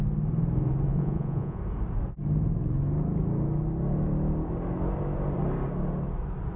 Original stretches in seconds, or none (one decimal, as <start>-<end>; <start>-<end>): 0.0-0.9; 1.6-6.6